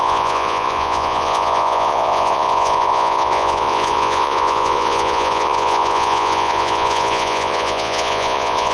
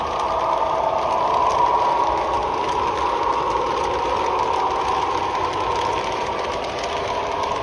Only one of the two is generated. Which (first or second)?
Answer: first